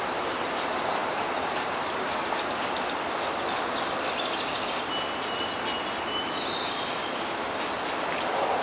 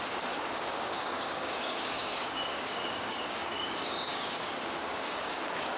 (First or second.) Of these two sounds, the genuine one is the first